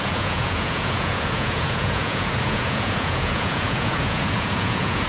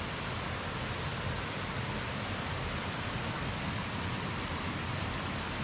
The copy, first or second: first